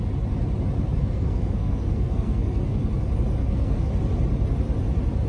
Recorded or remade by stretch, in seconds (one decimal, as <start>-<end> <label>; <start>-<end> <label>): 0.0-1.0 recorded; 1.0-2.9 remade; 2.9-3.4 recorded; 3.4-3.9 remade; 3.9-5.3 recorded

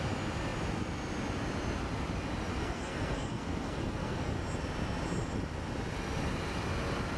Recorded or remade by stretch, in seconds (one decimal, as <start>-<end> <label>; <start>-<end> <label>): 0.0-2.5 recorded; 2.5-4.3 remade; 4.3-7.2 recorded

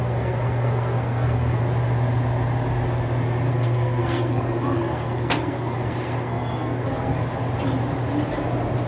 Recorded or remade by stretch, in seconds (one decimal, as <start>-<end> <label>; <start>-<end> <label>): 0.0-1.6 remade; 1.6-3.5 recorded; 3.5-7.2 remade; 7.2-8.9 recorded